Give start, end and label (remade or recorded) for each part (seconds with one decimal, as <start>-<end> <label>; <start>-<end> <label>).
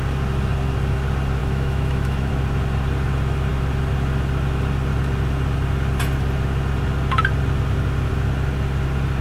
0.0-1.4 recorded; 1.4-2.3 remade; 2.3-9.2 recorded